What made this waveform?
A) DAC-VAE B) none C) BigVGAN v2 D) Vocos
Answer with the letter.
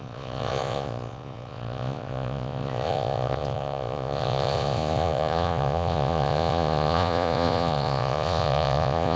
D